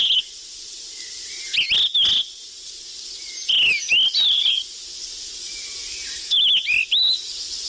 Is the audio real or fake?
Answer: real